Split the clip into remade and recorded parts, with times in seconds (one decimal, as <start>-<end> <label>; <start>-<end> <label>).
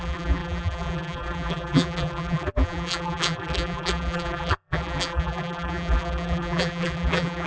0.0-7.5 remade